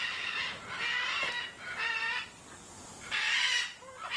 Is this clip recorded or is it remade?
recorded